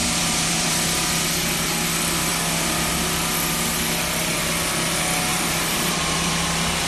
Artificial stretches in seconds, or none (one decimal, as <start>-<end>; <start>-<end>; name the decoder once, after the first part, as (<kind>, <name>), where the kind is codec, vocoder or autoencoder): 0.0-0.7 (vocoder, BigVGAN v2); 5.3-6.3